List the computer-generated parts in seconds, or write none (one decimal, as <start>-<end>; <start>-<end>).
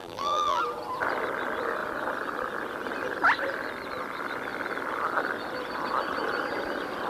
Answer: 0.0-0.6